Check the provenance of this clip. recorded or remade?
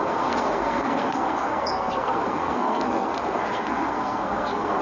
remade